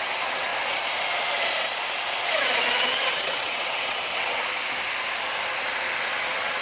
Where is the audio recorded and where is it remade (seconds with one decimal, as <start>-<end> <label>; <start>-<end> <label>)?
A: 0.0-0.5 remade; 0.5-3.1 recorded; 3.1-4.4 remade; 4.4-6.0 recorded; 6.0-6.6 remade